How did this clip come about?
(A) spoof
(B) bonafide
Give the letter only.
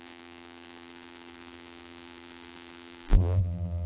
A